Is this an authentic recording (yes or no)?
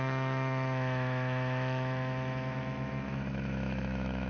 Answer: no